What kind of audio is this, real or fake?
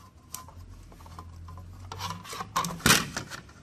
real